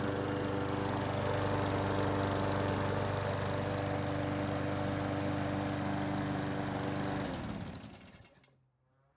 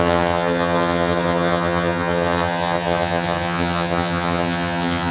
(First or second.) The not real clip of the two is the second